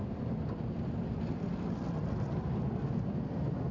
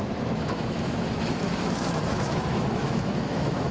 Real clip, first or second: first